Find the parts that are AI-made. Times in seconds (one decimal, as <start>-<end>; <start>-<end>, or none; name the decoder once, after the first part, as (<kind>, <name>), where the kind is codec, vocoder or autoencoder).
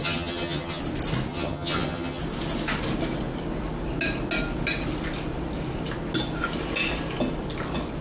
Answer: 0.0-0.8 (vocoder, HiFi-GAN); 1.3-2.2